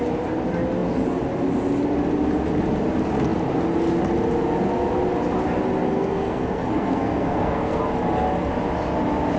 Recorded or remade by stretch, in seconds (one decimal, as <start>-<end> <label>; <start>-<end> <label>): 0.0-5.9 recorded; 5.9-7.8 remade; 7.8-9.4 recorded